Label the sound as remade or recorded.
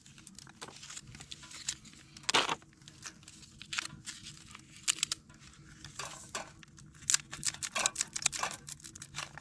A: recorded